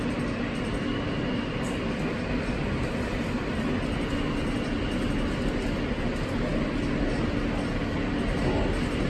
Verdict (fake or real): real